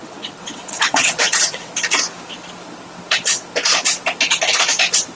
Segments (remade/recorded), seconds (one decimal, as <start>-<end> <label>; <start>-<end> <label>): 0.0-1.7 remade; 1.7-5.2 recorded